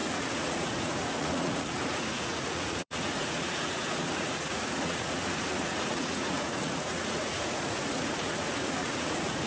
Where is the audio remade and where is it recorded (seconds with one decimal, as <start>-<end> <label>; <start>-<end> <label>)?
0.0-9.5 remade